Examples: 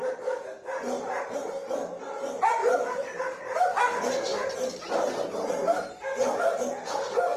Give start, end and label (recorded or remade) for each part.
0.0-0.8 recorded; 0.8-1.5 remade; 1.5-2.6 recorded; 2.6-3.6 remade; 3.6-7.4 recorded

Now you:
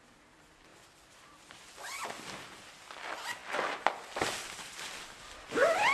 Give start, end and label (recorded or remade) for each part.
0.0-5.9 recorded